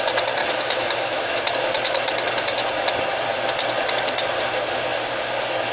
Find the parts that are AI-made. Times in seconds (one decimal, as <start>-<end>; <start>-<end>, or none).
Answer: 0.4-1.5